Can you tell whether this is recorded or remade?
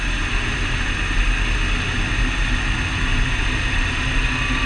recorded